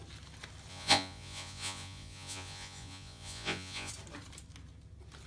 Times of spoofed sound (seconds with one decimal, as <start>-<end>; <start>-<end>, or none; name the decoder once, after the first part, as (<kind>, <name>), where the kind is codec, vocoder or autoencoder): 0.7-3.9 (vocoder, Vocos)